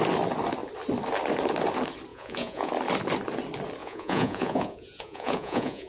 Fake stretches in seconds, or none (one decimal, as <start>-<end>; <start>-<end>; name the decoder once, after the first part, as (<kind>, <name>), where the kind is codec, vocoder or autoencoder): 2.1-2.7 (vocoder, Vocos); 3.8-5.9